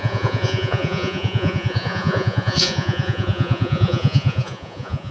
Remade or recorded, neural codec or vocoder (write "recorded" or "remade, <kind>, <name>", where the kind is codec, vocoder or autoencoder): remade, vocoder, Vocos